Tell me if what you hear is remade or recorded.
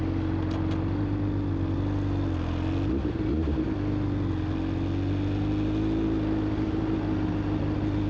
recorded